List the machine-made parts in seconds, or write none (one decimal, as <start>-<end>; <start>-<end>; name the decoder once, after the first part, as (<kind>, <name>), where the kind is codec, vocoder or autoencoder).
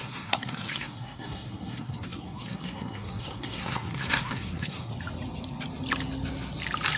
0.0-4.9 (codec, SNAC)